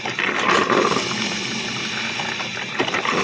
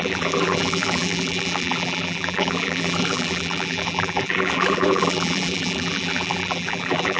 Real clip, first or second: first